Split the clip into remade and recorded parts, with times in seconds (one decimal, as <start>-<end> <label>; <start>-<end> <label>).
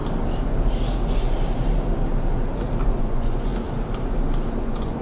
0.0-3.0 recorded; 3.0-3.5 remade; 3.5-4.6 recorded; 4.6-5.0 remade